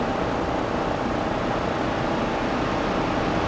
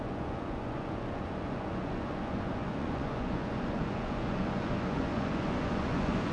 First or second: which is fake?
second